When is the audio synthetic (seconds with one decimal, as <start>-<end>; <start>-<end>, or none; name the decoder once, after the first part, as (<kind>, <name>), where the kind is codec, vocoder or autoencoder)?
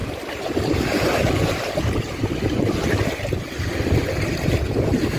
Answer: 0.0-3.1 (vocoder, BigVGAN v2)